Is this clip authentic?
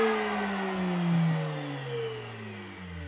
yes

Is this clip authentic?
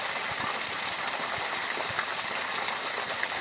yes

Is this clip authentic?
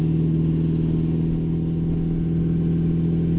yes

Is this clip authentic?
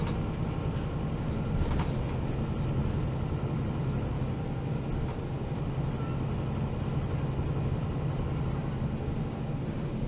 yes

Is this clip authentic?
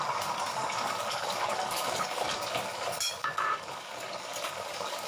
no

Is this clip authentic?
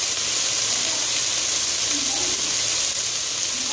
yes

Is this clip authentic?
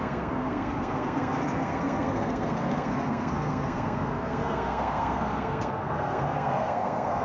no